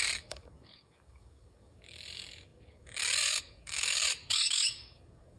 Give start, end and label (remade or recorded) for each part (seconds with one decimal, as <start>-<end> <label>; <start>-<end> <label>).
0.0-5.4 remade